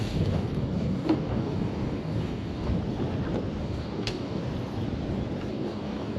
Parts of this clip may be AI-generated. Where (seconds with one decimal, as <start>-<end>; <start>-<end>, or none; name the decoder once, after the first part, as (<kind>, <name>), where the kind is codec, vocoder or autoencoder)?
0.0-2.7 (codec, DAC); 3.6-4.4; 5.5-6.2